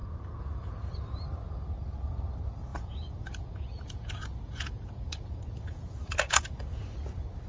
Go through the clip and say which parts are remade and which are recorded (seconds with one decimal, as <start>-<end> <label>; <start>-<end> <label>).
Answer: 0.0-0.9 remade; 0.9-2.7 recorded; 2.7-6.8 remade; 6.8-7.5 recorded